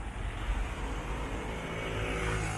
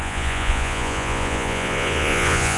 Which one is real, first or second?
first